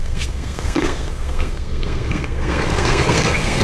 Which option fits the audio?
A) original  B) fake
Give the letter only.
B